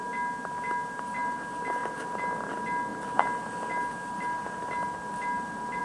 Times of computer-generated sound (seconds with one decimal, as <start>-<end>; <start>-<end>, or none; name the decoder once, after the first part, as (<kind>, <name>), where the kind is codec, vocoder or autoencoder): none